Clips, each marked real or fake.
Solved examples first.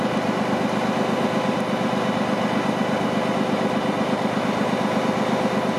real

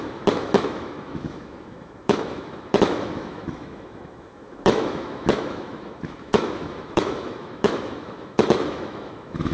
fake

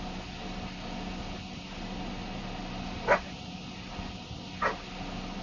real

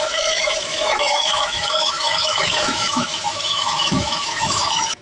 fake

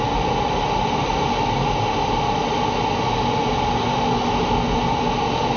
real